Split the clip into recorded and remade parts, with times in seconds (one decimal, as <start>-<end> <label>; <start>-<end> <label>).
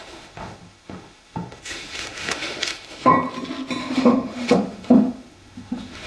0.0-3.1 remade; 3.1-3.8 recorded; 3.8-6.1 remade